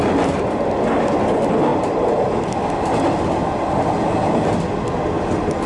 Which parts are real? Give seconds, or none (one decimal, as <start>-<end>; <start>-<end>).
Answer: 0.0-5.7

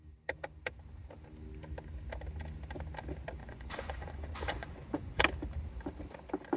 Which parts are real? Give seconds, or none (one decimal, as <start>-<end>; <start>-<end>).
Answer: 0.0-3.4; 5.2-6.6

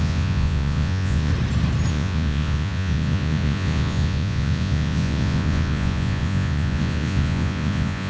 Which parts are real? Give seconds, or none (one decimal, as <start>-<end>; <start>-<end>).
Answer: 1.3-1.9

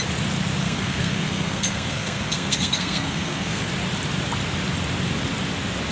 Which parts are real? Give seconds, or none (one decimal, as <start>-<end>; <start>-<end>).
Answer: 0.0-0.6; 3.7-5.9

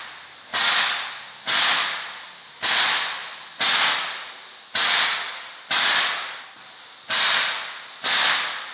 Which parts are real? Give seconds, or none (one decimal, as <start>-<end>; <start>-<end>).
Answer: 0.0-8.7